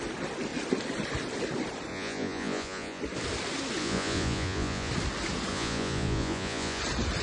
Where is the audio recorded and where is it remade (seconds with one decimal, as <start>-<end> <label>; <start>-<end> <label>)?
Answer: 0.0-1.9 recorded; 1.9-3.0 remade; 3.0-3.8 recorded; 3.8-4.9 remade; 4.9-5.5 recorded; 5.5-6.8 remade; 6.8-7.2 recorded